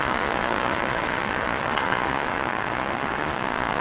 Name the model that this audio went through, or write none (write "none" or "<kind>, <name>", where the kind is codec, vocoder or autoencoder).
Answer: vocoder, Vocos